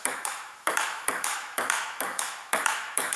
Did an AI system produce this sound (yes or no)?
yes